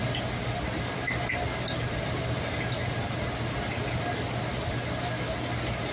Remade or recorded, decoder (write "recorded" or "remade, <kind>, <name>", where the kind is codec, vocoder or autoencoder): recorded